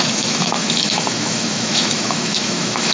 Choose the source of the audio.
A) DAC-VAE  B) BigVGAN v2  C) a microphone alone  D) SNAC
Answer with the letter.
A